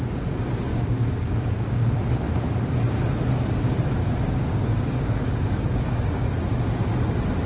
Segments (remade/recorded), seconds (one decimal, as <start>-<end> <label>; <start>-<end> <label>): 0.0-0.7 recorded; 0.7-1.9 remade; 1.9-4.0 recorded; 4.0-6.2 remade; 6.2-7.5 recorded